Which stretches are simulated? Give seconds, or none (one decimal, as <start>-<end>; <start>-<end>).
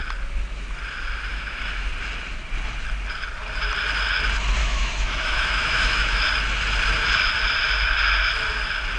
1.3-1.9; 4.6-6.2